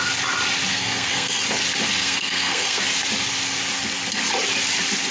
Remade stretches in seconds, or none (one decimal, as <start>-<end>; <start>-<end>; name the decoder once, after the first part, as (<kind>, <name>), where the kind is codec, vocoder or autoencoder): 0.7-1.4 (codec, SNAC); 2.0-2.8